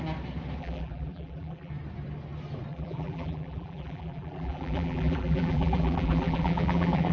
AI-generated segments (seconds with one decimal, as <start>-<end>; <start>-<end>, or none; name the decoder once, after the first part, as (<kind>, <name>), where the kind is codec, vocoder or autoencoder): 0.6-1.7 (vocoder, BigVGAN v2); 2.7-7.1